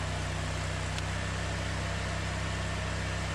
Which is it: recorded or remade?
recorded